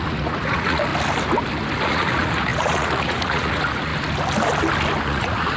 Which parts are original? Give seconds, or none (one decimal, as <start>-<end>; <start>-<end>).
0.9-1.8; 3.9-5.0